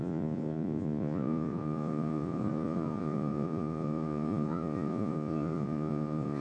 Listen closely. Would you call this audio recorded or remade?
remade